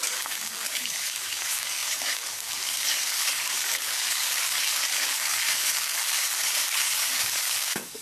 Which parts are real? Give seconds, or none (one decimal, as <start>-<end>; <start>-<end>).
none